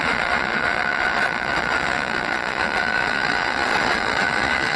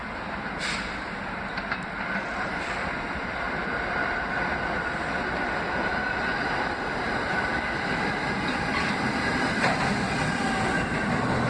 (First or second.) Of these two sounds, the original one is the second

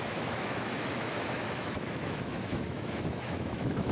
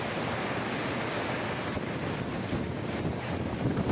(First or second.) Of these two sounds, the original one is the second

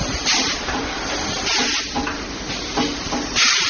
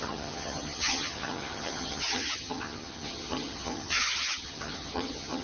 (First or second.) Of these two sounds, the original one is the first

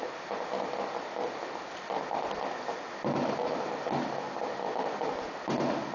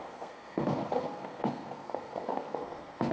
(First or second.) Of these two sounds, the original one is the first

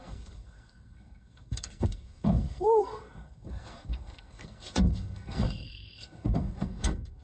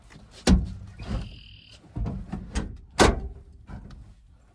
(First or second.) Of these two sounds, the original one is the second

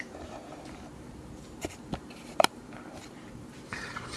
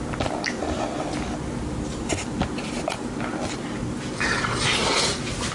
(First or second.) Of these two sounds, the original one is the second